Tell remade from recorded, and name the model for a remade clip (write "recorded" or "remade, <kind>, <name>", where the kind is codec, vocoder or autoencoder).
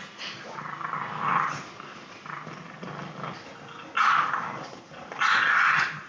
recorded